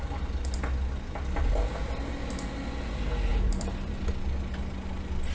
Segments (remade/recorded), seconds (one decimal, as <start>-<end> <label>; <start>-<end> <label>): 0.0-3.3 recorded; 3.3-4.1 remade; 4.1-5.3 recorded